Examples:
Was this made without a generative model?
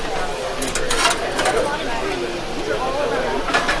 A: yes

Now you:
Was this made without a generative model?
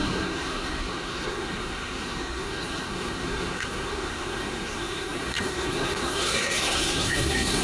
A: no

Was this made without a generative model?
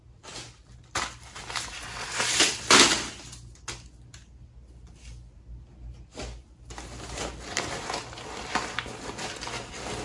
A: yes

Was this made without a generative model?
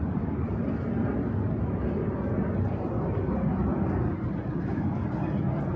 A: yes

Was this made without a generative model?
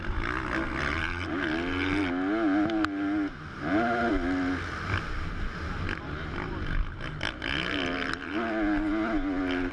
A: yes